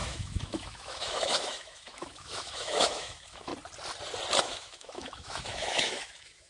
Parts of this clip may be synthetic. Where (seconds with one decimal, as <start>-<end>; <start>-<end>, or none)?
0.0-3.5; 4.4-6.5